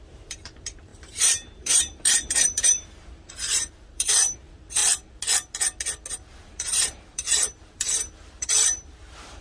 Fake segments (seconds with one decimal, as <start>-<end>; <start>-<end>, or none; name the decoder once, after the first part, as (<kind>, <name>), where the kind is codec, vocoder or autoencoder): 0.0-4.8 (vocoder, BigVGAN v2); 6.1-9.4